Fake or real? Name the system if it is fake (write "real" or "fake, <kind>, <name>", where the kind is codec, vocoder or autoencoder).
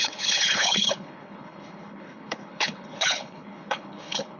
fake, codec, HILCodec